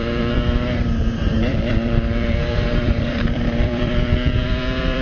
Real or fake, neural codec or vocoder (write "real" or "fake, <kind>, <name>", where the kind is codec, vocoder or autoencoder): fake, vocoder, BigVGAN v2